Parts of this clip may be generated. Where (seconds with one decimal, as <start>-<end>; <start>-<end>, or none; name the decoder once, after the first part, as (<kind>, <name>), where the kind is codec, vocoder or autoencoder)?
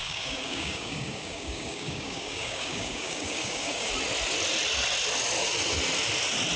0.0-3.9 (codec, DAC)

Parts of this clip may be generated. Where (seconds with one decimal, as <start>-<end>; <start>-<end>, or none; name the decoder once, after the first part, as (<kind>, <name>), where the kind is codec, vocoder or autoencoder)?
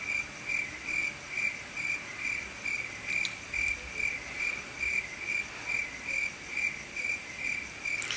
none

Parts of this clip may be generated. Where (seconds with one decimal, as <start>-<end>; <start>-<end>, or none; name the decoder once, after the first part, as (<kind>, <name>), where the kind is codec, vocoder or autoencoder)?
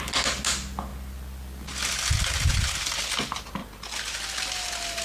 none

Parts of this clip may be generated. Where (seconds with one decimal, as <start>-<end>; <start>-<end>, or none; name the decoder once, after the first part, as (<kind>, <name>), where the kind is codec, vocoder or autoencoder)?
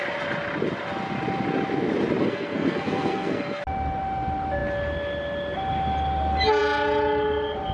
2.2-3.6 (codec, SNAC)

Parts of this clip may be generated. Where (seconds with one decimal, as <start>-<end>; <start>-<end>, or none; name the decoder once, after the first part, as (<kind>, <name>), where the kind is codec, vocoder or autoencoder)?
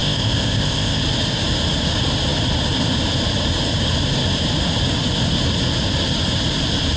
0.0-1.0 (codec, ZipCodec)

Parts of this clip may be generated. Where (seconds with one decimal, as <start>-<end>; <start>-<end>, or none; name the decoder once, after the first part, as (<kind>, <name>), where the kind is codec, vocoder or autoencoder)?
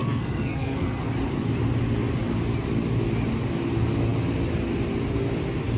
0.0-1.1 (codec, SNAC)